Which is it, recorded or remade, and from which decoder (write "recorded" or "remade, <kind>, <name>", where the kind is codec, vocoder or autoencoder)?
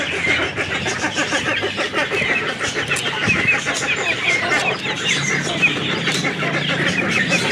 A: recorded